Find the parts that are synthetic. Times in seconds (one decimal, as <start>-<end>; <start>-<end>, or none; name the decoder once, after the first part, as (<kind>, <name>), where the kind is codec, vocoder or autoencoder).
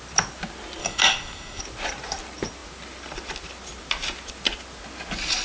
0.8-1.6 (codec, DAC)